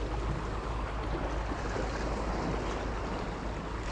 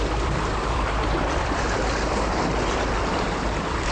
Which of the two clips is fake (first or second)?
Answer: second